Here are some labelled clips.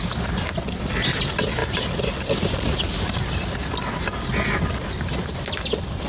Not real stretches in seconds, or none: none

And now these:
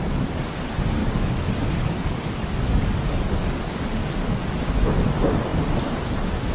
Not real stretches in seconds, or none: 1.0-4.5 (codec, DAC)

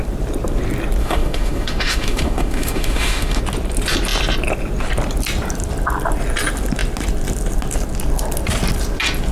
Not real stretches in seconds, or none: 1.0-3.4 (autoencoder, DAC-VAE)

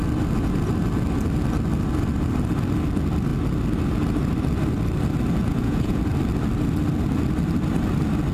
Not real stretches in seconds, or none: 5.4-6.0 (vocoder, Vocos)

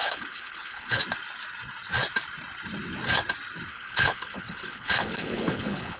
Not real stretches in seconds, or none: 0.0-1.0 (codec, HILCodec); 3.7-6.0

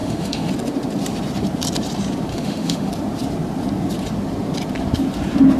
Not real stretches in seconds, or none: 0.0-0.5 (autoencoder, DAC-VAE); 2.3-2.9